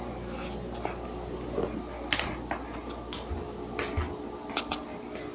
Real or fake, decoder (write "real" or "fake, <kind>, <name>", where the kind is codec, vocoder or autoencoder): real